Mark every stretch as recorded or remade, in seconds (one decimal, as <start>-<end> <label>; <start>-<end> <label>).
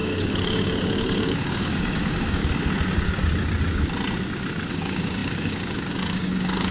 0.0-2.4 remade; 2.4-4.7 recorded; 4.7-6.7 remade